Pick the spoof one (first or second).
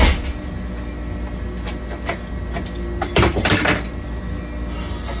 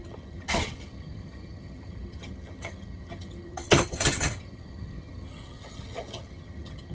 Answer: second